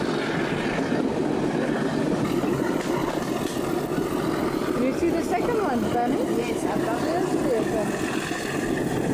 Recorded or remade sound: recorded